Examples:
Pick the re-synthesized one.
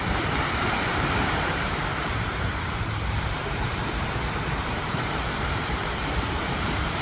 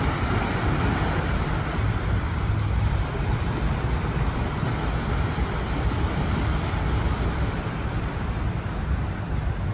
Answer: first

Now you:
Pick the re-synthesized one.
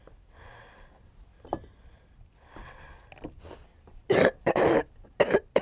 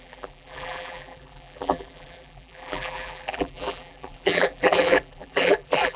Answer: second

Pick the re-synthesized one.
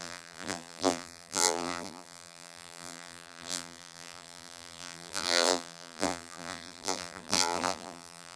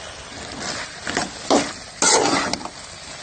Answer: first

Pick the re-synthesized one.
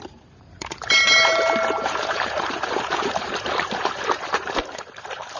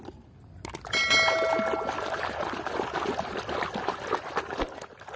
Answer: first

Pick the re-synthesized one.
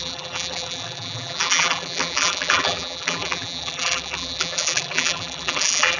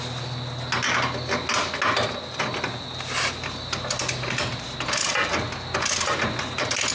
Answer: first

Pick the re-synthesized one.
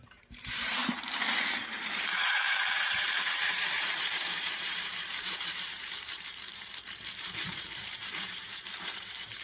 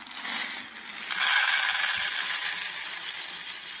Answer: first